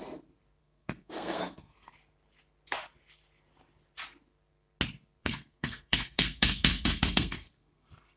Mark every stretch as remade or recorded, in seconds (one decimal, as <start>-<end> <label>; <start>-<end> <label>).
0.0-0.6 recorded; 0.6-1.9 remade; 1.9-5.2 recorded; 5.2-8.2 remade

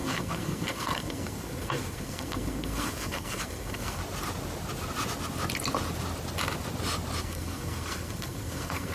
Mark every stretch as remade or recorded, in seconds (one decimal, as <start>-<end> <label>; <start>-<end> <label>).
0.0-4.0 remade; 4.0-7.2 recorded; 7.2-8.9 remade